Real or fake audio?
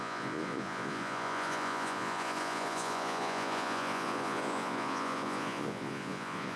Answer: fake